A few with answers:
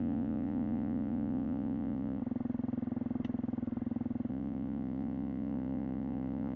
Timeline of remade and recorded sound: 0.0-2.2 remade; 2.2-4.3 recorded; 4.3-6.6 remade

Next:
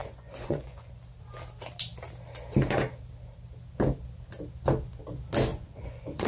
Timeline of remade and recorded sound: 0.0-1.0 remade; 1.0-5.5 recorded; 5.5-6.3 remade

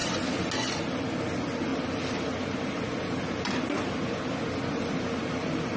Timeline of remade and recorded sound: 0.0-5.8 recorded

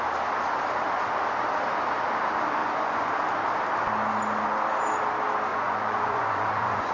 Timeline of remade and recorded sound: 0.0-2.6 recorded; 2.6-3.1 remade; 3.1-5.5 recorded; 5.5-6.9 remade

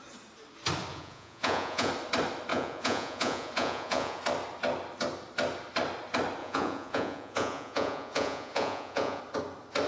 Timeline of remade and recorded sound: 0.0-0.9 recorded; 0.9-1.9 remade; 1.9-2.5 recorded; 2.5-4.2 remade; 4.2-6.4 recorded; 6.4-9.2 remade; 9.2-9.9 recorded

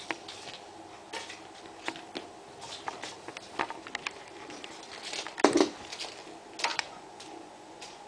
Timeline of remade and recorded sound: 0.0-6.7 recorded; 6.7-8.1 remade

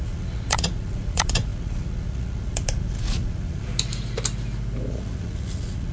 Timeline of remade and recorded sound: 0.0-3.7 remade; 3.7-4.9 recorded; 4.9-5.9 remade

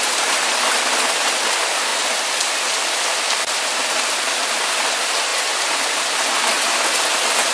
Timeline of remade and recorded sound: 0.0-7.5 recorded